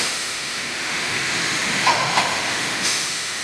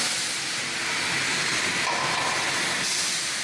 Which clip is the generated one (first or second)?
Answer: first